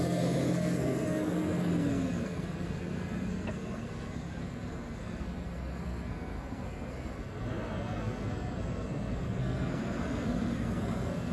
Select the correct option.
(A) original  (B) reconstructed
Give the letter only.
B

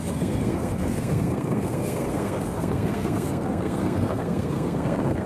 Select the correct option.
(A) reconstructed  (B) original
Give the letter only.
A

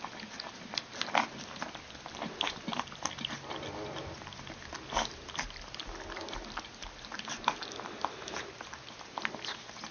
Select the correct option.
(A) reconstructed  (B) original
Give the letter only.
B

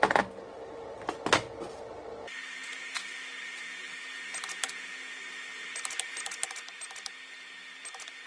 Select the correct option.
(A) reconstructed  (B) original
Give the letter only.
B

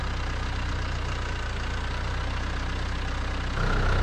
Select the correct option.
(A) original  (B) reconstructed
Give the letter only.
A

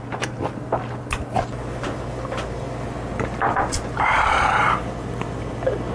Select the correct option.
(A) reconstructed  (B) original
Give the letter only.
B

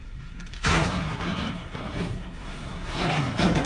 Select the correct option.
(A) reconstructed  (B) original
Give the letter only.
A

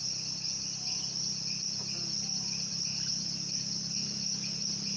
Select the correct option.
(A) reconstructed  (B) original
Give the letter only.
B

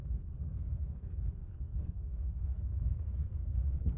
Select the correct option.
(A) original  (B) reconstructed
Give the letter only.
B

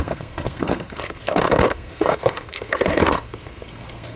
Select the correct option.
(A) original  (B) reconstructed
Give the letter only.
B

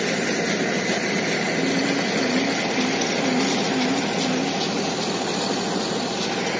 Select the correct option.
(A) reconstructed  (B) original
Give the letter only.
B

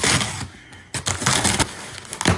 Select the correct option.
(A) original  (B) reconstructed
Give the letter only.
A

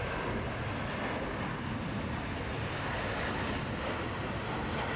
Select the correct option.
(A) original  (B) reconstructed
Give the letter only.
A